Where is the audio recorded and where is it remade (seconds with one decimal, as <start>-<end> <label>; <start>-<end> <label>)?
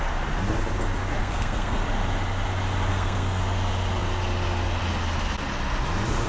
0.0-1.2 recorded; 1.2-1.8 remade; 1.8-2.9 recorded; 2.9-3.4 remade; 3.4-6.3 recorded